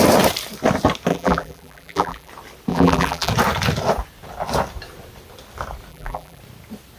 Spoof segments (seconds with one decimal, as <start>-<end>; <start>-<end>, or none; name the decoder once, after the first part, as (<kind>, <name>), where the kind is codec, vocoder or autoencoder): 1.1-2.3 (vocoder, BigVGAN v2); 2.7-3.3; 5.9-6.4